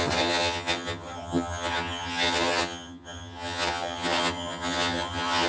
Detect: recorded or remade remade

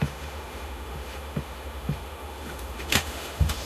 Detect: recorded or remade remade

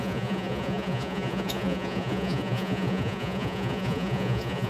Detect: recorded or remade remade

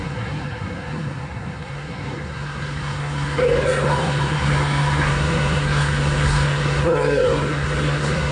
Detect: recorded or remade remade